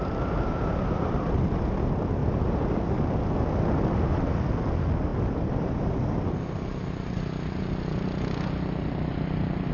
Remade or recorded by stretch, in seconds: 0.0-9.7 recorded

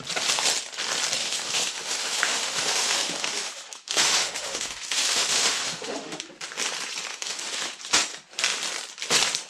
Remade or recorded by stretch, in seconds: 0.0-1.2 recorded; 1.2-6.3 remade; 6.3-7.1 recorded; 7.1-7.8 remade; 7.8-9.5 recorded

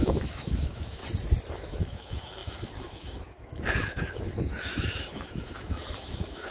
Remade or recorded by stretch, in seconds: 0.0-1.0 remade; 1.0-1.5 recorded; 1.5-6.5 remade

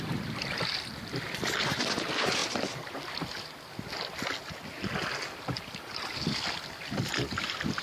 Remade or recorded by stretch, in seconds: 0.0-7.8 recorded

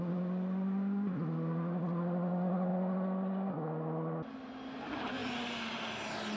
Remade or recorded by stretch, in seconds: 0.0-6.4 recorded

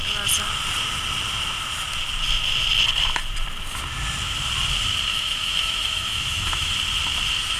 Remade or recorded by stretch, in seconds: 0.0-5.1 recorded; 5.1-6.7 remade; 6.7-7.6 recorded